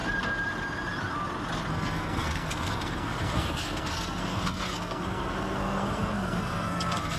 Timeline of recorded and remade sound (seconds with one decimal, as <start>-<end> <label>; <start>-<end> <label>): 0.0-1.7 recorded; 1.7-7.2 remade